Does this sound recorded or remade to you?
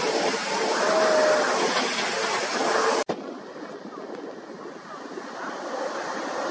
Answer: recorded